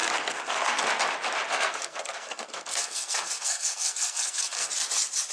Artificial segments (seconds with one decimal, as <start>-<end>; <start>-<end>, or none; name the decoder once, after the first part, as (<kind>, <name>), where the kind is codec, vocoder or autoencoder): 0.0-0.8 (codec, SNAC); 1.5-4.7